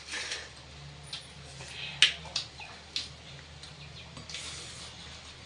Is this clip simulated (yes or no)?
no